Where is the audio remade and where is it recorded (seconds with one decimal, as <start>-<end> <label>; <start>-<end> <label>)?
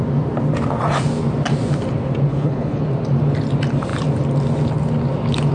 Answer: 0.0-2.3 recorded; 2.3-2.8 remade; 2.8-5.5 recorded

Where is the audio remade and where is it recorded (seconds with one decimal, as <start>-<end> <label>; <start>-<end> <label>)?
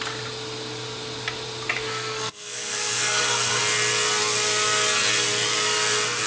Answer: 0.0-1.9 recorded; 1.9-3.6 remade; 3.6-6.3 recorded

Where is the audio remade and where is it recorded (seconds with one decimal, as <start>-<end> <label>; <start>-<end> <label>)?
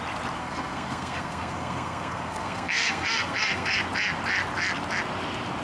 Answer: 0.0-0.4 recorded; 0.4-3.8 remade; 3.8-5.6 recorded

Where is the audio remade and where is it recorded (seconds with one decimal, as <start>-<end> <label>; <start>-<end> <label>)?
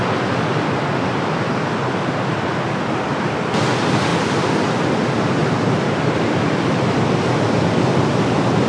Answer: 0.0-0.6 remade; 0.6-4.1 recorded; 4.1-4.9 remade; 4.9-5.4 recorded; 5.4-6.7 remade; 6.7-8.7 recorded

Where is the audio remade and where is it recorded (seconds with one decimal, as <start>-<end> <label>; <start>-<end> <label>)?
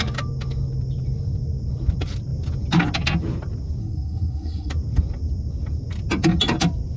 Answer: 0.0-3.8 recorded; 3.8-4.7 remade; 4.7-7.0 recorded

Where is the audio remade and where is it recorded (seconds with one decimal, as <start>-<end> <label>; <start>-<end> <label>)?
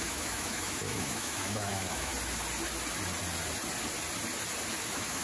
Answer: 0.0-2.1 remade; 2.1-4.8 recorded; 4.8-5.2 remade